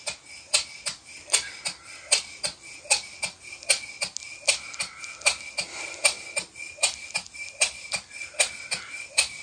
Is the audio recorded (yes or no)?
yes